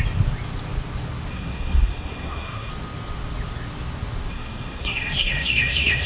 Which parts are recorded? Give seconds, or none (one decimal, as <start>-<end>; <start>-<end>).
0.0-1.3; 2.7-4.3